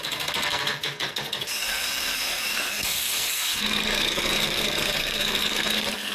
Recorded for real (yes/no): no